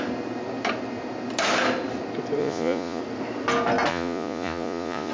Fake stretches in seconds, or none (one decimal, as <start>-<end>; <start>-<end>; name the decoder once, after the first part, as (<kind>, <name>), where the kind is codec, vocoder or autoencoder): 2.4-3.0 (vocoder, Vocos); 3.9-5.1